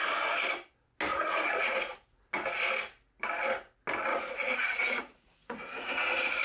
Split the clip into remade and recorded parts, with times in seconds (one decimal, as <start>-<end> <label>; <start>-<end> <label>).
0.0-1.1 recorded; 1.1-2.3 remade; 2.3-4.1 recorded; 4.1-6.4 remade